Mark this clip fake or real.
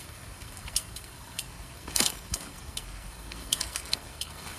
fake